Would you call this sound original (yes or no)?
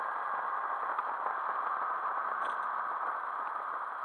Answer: yes